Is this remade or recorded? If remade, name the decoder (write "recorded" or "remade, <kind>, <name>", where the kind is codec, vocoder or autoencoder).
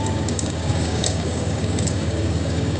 remade, codec, DAC